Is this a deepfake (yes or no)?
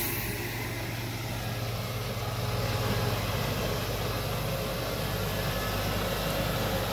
no